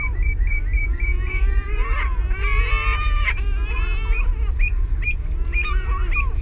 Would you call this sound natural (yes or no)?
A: yes